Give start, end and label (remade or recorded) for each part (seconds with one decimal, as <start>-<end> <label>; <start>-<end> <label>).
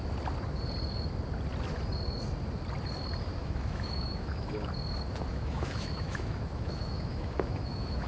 0.0-3.4 recorded; 3.4-4.7 remade; 4.7-5.3 recorded; 5.3-8.1 remade